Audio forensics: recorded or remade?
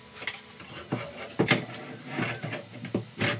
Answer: recorded